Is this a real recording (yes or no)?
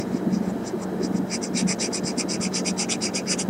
yes